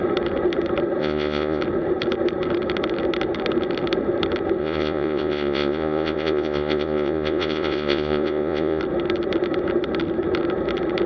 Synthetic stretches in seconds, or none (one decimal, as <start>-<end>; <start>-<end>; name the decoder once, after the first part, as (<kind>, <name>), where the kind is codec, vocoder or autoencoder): 1.0-1.6 (vocoder, Vocos); 4.6-8.8

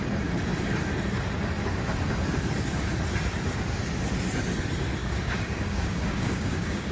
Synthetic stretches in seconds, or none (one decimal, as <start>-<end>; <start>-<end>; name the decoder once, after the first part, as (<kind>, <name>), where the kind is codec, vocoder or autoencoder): 5.0-6.9 (codec, DAC)

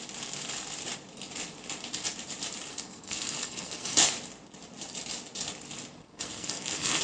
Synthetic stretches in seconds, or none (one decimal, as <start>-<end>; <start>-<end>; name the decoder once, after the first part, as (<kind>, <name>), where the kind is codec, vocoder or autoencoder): 2.7-4.1 (codec, SNAC); 6.0-7.0

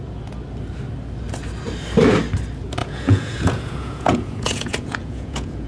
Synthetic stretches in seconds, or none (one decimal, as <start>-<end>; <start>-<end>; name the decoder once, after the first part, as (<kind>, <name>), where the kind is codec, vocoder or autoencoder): 2.8-5.7 (vocoder, Vocos)